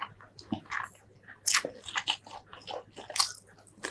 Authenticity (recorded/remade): recorded